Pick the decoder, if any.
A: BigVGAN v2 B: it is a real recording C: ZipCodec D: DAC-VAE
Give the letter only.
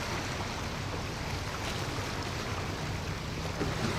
B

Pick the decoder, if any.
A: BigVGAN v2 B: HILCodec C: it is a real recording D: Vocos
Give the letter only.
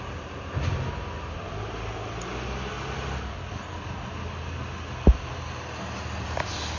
C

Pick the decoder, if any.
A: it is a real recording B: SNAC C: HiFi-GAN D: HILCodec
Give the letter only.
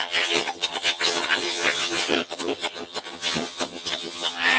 C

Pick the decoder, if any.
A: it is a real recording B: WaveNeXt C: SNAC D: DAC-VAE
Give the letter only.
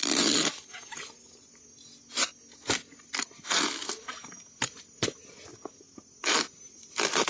A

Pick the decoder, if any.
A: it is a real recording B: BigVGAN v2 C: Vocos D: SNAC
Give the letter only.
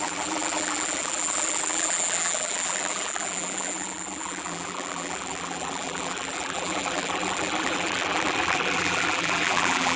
B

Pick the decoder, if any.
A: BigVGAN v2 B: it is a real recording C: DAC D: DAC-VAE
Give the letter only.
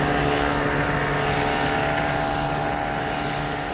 B